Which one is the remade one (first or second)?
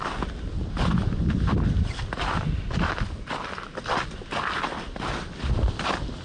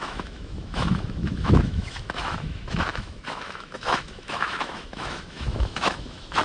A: second